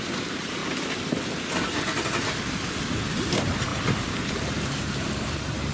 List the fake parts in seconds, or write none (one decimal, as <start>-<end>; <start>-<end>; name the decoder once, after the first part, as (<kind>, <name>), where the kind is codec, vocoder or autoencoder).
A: 0.0-0.6 (vocoder, BigVGAN v2); 3.0-5.7